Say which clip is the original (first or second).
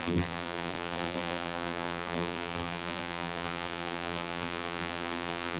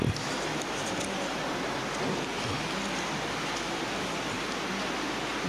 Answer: second